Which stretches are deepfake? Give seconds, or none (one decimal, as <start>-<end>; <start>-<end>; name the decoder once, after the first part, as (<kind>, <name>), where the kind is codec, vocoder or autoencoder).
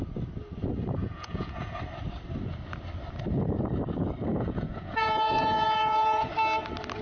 1.0-1.8 (vocoder, Vocos); 4.3-6.3